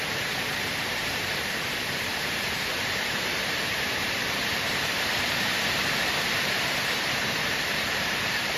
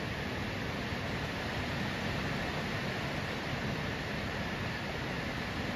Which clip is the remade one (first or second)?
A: first